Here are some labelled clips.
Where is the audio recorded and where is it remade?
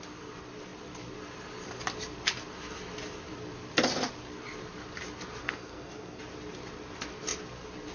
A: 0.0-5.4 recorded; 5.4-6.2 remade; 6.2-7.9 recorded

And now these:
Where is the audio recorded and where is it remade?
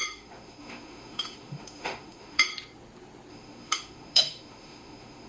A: 0.0-2.5 remade; 2.5-3.3 recorded; 3.3-5.3 remade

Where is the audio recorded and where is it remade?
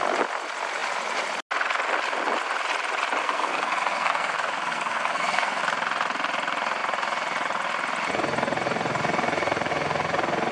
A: 0.0-3.2 recorded; 3.2-5.6 remade; 5.6-10.5 recorded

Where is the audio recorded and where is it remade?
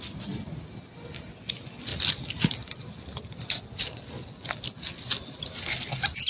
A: 0.0-6.3 recorded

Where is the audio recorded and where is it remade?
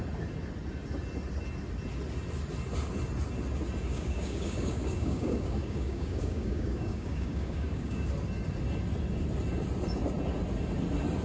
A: 0.0-3.9 recorded; 3.9-8.1 remade; 8.1-11.2 recorded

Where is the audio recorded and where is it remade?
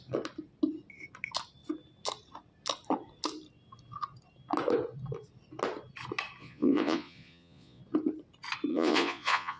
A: 0.0-6.4 recorded; 6.4-7.8 remade; 7.8-8.7 recorded; 8.7-9.6 remade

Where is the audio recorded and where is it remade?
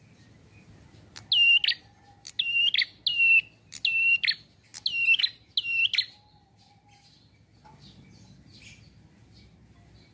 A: 0.0-10.1 recorded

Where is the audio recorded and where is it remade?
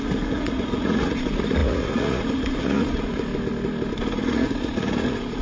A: 0.0-3.3 remade; 3.3-4.0 recorded; 4.0-5.4 remade